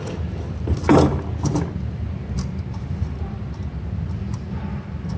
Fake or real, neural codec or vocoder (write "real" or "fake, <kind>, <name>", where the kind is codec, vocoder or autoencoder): real